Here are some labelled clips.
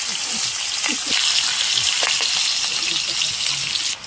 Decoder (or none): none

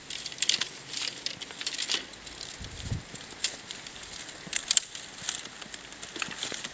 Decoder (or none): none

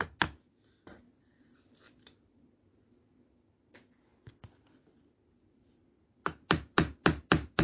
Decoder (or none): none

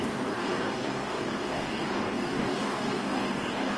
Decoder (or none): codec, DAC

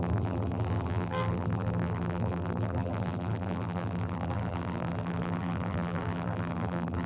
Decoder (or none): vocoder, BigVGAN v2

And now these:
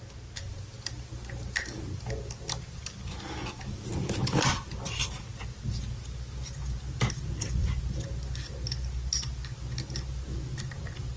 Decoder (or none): none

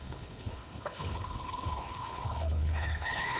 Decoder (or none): codec, HILCodec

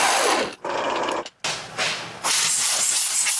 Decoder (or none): none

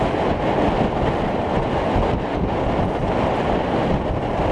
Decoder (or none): none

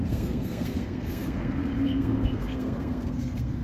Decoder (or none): codec, SNAC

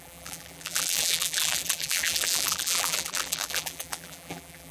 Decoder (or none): vocoder, BigVGAN v2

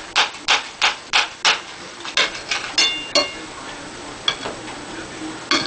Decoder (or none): none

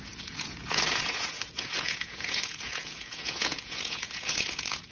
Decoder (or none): vocoder, Vocos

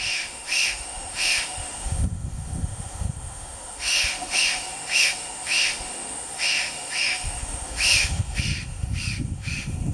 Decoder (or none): autoencoder, DAC-VAE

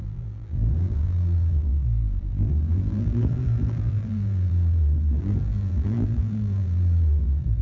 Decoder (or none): vocoder, BigVGAN v2